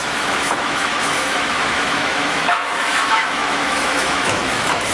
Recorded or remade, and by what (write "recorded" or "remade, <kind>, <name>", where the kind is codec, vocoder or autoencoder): remade, autoencoder, DAC-VAE